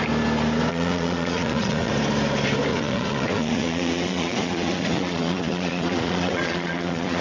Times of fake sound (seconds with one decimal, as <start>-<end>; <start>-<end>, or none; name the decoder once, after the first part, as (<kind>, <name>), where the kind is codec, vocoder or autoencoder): 0.7-1.9 (vocoder, Vocos); 2.7-7.2